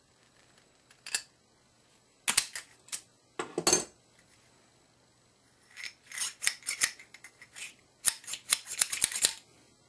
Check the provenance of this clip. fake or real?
real